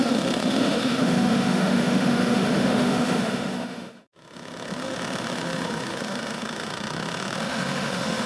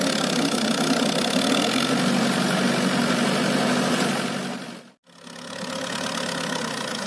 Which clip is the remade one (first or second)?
first